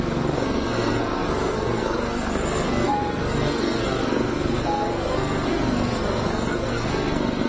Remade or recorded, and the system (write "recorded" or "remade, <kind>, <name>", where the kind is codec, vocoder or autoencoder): remade, codec, SNAC